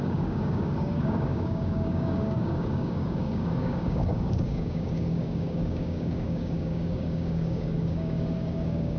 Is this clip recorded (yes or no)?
no